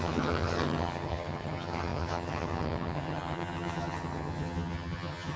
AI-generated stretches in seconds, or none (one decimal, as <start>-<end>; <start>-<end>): 0.0-5.4